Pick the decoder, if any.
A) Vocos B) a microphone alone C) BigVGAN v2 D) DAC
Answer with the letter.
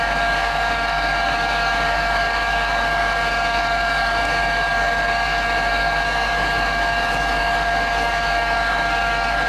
D